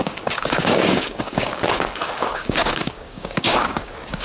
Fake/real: fake